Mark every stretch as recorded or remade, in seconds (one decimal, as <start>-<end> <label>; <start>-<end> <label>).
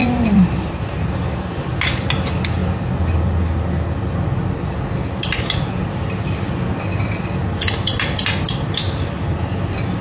0.0-1.7 remade; 1.7-5.0 recorded; 5.0-6.2 remade; 6.2-10.0 recorded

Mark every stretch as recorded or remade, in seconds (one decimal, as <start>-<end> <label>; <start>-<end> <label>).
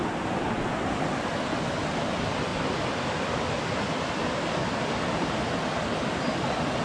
0.0-6.8 recorded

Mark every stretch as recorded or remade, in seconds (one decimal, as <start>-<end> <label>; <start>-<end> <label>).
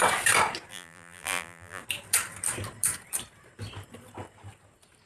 0.0-0.7 recorded; 0.7-1.8 remade; 1.8-5.1 recorded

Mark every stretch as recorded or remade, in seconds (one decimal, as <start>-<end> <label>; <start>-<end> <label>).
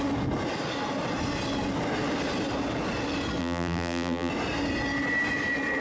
0.0-3.4 recorded; 3.4-4.3 remade; 4.3-5.8 recorded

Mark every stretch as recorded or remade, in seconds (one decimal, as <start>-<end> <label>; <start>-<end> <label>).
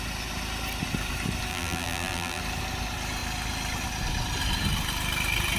0.0-1.5 recorded; 1.5-2.4 remade; 2.4-5.6 recorded